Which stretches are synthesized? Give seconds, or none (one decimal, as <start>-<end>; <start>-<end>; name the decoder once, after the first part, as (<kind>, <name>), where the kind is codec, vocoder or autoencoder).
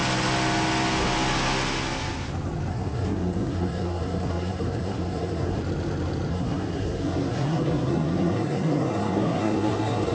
2.7-5.6 (codec, SNAC); 6.3-10.1